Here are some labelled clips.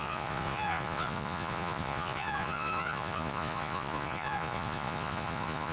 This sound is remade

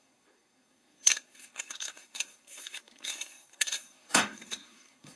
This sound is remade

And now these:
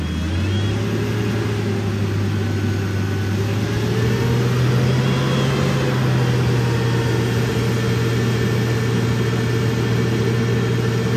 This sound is recorded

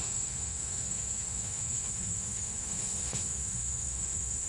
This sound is remade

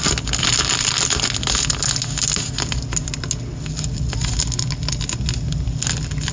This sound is recorded